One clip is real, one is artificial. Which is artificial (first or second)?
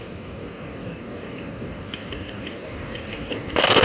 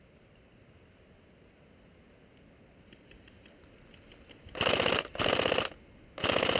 first